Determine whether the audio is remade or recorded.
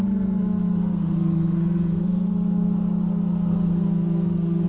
remade